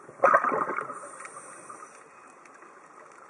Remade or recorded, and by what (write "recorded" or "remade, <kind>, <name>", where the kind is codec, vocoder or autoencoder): recorded